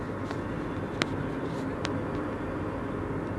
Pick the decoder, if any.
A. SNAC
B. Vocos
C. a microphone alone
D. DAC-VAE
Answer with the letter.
C